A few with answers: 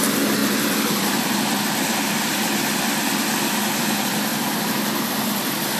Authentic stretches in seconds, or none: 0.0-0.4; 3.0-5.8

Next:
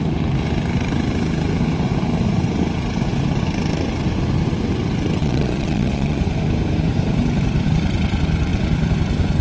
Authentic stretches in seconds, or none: 0.0-5.2; 6.2-9.4